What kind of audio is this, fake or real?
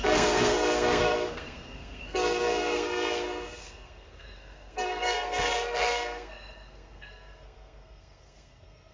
fake